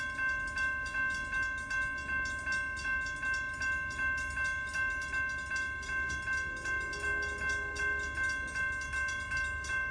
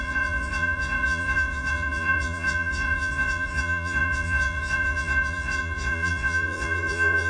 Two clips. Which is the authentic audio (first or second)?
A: first